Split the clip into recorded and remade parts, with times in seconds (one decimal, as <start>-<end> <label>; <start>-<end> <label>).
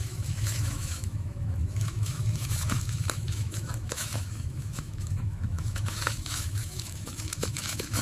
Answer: 0.0-8.0 remade